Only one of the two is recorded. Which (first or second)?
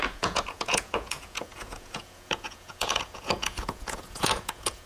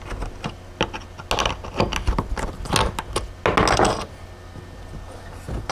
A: second